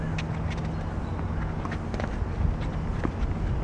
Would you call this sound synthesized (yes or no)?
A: no